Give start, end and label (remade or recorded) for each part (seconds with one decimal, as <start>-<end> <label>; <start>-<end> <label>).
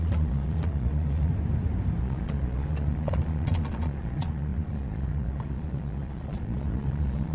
0.0-1.3 remade; 1.3-2.0 recorded; 2.0-7.3 remade